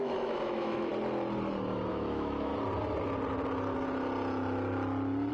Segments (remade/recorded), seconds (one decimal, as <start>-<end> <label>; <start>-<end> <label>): 0.0-0.9 remade; 0.9-1.9 recorded; 1.9-2.5 remade; 2.5-5.3 recorded